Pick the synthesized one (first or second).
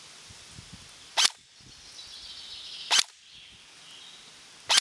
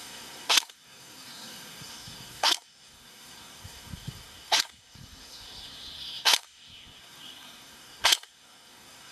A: second